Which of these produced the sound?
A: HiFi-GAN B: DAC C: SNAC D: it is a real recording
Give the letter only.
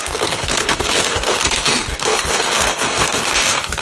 C